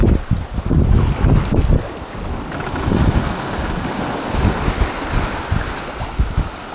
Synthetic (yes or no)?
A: no